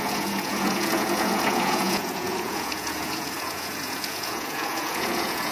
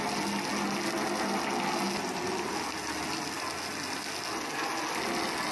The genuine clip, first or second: second